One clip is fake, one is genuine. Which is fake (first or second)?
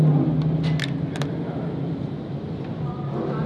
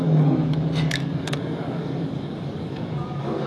second